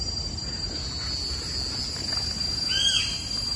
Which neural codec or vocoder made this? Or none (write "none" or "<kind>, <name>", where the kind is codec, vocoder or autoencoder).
none